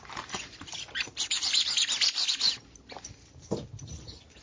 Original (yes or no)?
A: no